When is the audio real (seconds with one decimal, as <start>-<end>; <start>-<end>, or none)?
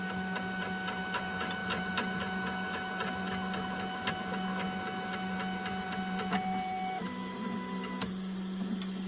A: 0.0-1.6; 2.2-9.1